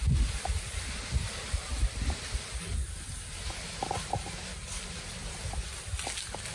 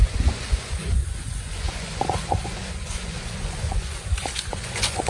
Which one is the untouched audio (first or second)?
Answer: first